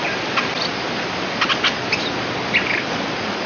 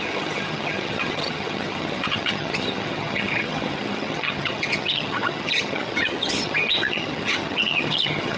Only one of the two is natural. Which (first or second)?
first